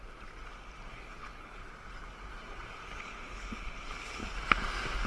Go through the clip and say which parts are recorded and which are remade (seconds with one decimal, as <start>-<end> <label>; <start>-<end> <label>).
0.0-0.9 recorded; 0.9-1.6 remade; 1.6-3.0 recorded; 3.0-4.2 remade; 4.2-5.1 recorded